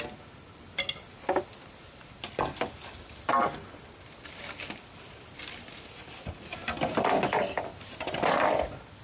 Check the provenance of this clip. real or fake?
real